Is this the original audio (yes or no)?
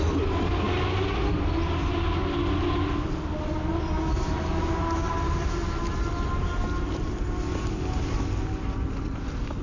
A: yes